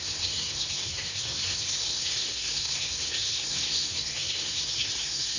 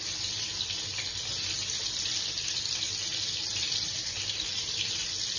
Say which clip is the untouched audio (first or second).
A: second